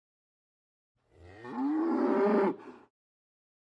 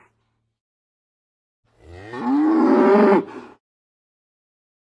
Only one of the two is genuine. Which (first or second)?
second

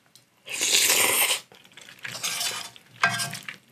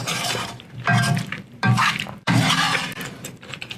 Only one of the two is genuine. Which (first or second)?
first